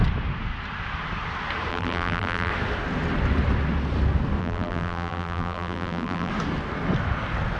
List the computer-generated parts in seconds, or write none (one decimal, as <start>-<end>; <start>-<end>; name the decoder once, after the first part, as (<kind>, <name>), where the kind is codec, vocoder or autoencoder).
1.7-2.5 (vocoder, BigVGAN v2); 4.4-6.3